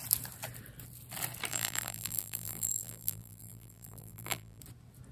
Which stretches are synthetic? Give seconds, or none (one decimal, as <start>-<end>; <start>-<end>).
1.5-4.6